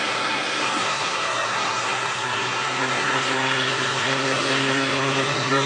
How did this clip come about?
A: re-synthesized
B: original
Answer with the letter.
A